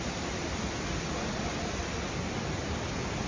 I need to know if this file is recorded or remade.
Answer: recorded